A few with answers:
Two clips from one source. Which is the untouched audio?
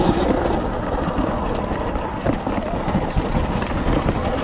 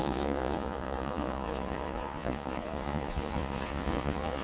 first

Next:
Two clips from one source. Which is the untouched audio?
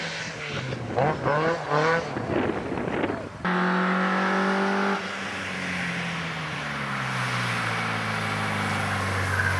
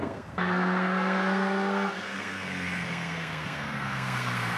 first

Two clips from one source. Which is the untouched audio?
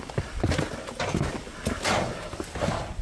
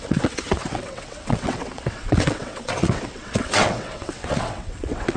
first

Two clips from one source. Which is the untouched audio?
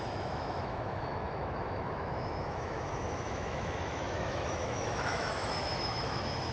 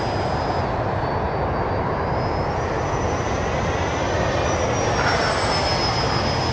second